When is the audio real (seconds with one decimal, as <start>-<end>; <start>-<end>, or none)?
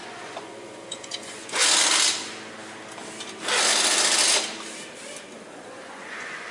1.6-5.5